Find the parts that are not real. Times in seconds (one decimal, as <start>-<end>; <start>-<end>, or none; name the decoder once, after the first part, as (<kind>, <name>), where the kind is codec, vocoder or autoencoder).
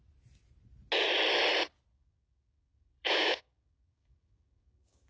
1.9-5.1 (codec, DAC)